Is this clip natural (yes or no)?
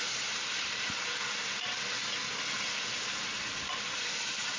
yes